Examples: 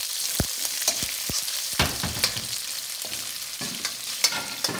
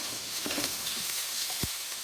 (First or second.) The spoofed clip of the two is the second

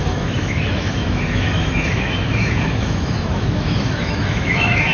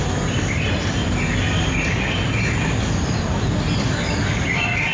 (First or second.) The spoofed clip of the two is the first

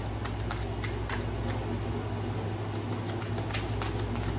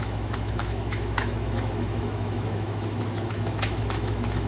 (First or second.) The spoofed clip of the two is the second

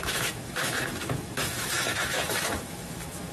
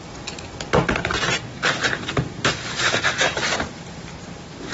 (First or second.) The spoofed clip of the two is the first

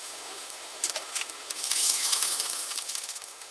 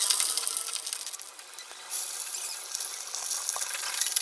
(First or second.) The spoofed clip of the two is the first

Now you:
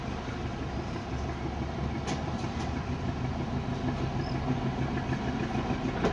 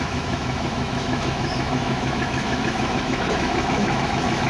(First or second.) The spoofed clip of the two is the second